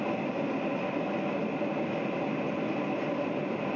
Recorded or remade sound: recorded